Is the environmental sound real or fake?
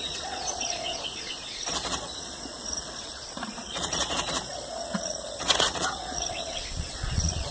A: fake